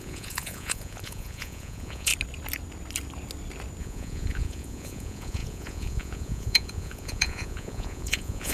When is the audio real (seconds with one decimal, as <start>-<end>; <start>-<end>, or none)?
2.1-3.8